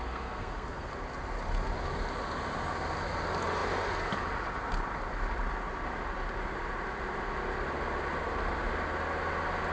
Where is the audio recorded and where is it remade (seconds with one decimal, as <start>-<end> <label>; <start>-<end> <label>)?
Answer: 0.0-0.9 remade; 0.9-9.7 recorded